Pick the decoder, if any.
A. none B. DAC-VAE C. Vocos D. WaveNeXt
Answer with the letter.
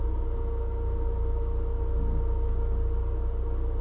A